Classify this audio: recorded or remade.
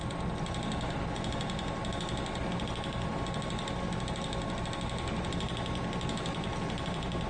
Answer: recorded